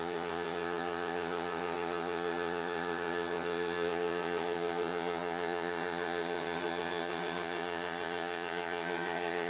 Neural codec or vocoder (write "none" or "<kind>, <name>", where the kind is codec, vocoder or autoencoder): vocoder, HiFi-GAN